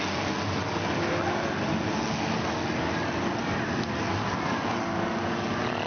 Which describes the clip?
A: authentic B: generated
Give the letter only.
A